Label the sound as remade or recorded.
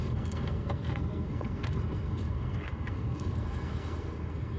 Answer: remade